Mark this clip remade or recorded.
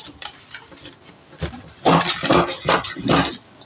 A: recorded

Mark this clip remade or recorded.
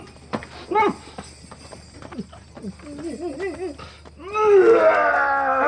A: recorded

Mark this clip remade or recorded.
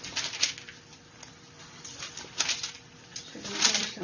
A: recorded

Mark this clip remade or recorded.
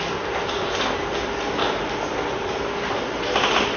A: recorded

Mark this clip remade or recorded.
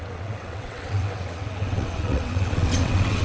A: remade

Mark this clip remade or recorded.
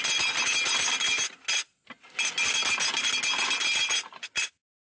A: recorded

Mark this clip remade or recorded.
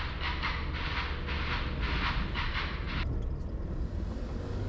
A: recorded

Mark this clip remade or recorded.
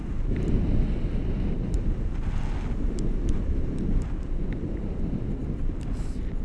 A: recorded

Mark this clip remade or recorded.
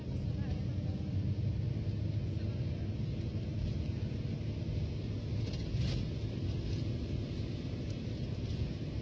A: recorded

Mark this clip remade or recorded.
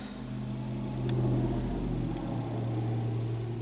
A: recorded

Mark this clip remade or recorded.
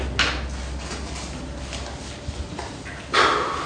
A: recorded